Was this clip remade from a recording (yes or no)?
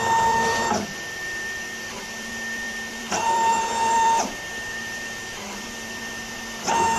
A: yes